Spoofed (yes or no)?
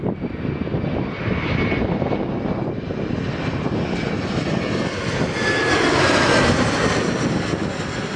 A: no